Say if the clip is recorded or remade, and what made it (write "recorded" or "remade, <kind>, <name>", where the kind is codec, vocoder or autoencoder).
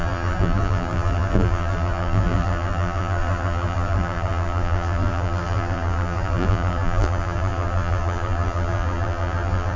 remade, vocoder, BigVGAN v2